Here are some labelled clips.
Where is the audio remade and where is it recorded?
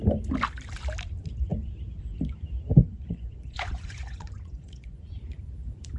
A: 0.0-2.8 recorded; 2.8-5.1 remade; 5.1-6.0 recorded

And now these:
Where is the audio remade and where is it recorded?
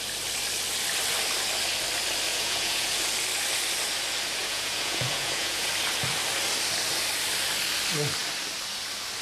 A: 0.0-2.3 recorded; 2.3-3.0 remade; 3.0-4.4 recorded; 4.4-5.7 remade; 5.7-9.2 recorded